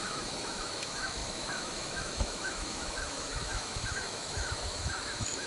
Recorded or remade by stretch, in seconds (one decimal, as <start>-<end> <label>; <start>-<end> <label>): 0.0-5.5 remade